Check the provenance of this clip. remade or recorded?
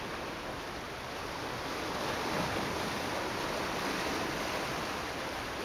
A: recorded